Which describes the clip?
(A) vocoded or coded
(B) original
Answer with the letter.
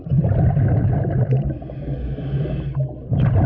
B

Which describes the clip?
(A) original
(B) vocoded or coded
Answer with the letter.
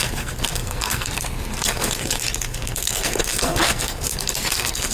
B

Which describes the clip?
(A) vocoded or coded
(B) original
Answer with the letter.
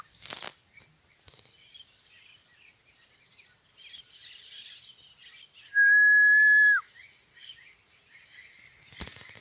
B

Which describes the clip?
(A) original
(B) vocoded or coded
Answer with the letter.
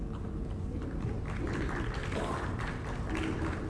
A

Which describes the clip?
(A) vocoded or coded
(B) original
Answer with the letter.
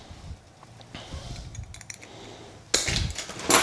B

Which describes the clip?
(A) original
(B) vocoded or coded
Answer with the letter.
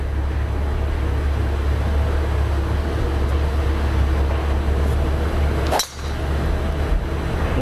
A